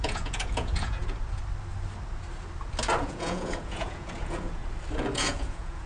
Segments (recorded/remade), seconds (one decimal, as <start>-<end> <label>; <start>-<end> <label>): 0.0-1.0 remade; 1.0-3.0 recorded; 3.0-4.6 remade; 4.6-5.1 recorded; 5.1-5.9 remade